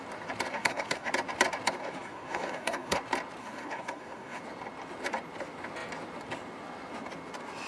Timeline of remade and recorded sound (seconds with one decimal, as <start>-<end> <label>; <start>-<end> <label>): 0.0-0.5 recorded; 0.5-1.1 remade; 1.1-1.8 recorded; 1.8-3.0 remade; 3.0-3.4 recorded; 3.4-4.4 remade; 4.4-7.7 recorded